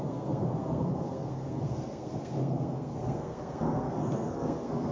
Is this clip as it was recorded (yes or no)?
no